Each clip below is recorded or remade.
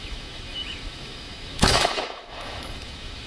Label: remade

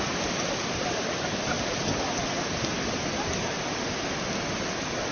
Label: recorded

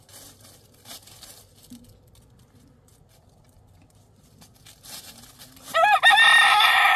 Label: recorded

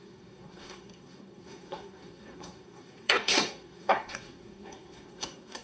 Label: remade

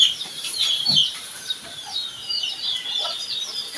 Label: remade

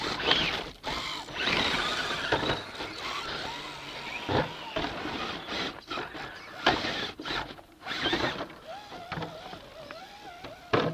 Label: recorded